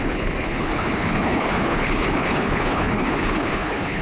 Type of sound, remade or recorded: remade